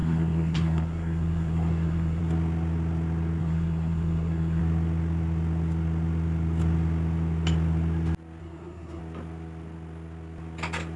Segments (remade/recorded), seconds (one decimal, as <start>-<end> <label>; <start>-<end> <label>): 0.0-2.2 remade; 2.2-3.4 recorded; 3.4-4.6 remade; 4.6-8.4 recorded; 8.4-9.0 remade; 9.0-11.0 recorded